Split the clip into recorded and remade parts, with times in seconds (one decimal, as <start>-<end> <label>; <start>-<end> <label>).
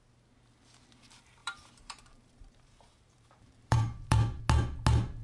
0.0-1.4 recorded; 1.4-4.4 remade; 4.4-5.2 recorded